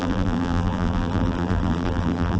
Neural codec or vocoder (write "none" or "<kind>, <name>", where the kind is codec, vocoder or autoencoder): vocoder, BigVGAN v2